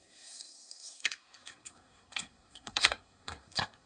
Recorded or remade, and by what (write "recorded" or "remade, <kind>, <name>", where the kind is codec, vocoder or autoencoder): remade, codec, SNAC